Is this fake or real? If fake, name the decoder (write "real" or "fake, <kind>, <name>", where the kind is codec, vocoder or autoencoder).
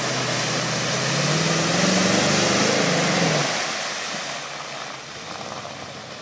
real